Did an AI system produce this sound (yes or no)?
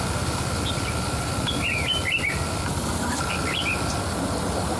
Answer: no